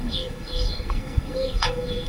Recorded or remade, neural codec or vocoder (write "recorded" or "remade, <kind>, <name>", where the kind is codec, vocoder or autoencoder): remade, codec, SNAC